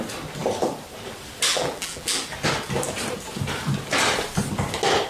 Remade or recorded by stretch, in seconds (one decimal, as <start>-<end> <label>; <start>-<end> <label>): 0.0-1.5 recorded; 1.5-2.2 remade; 2.2-5.1 recorded